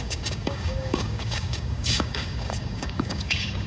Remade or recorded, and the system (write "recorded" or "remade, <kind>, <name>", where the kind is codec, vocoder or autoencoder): remade, codec, DAC